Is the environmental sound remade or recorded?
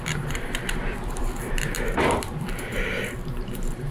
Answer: remade